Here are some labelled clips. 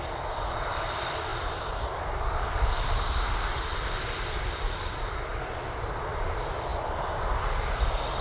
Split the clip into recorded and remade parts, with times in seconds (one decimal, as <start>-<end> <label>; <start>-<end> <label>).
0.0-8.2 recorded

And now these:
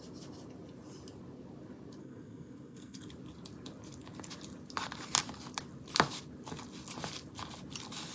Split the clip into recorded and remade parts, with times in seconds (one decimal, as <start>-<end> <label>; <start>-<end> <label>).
0.0-2.0 recorded; 2.0-3.1 remade; 3.1-8.1 recorded

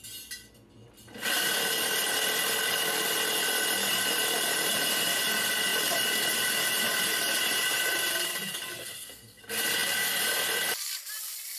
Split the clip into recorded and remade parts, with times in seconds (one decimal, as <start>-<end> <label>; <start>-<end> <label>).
0.0-8.8 recorded; 8.8-9.4 remade; 9.4-11.6 recorded

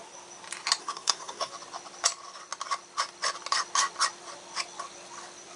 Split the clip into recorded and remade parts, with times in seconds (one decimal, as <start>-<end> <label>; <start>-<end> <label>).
0.0-0.8 recorded; 0.8-1.5 remade; 1.5-5.6 recorded

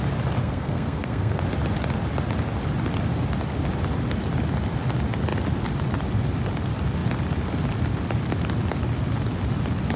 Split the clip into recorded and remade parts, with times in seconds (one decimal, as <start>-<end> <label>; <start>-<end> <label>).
0.0-0.4 recorded; 0.4-1.4 remade; 1.4-10.0 recorded